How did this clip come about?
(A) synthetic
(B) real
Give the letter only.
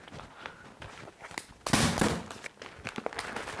B